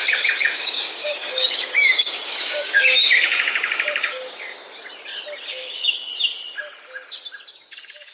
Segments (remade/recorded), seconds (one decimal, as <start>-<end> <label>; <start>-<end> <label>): 0.0-4.6 remade; 4.6-5.5 recorded; 5.5-6.1 remade; 6.1-7.5 recorded; 7.5-8.1 remade